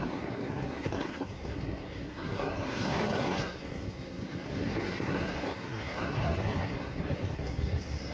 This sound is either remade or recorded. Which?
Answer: remade